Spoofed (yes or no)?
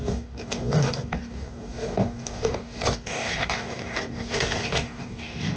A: yes